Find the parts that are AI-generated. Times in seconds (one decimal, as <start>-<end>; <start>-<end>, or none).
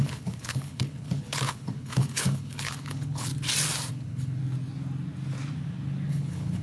0.0-3.3; 3.9-4.4; 6.1-6.6